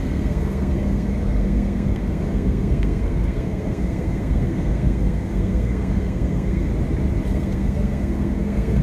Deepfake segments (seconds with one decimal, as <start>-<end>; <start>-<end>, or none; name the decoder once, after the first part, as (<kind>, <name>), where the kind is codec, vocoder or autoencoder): 0.0-6.7 (codec, SNAC); 7.3-8.8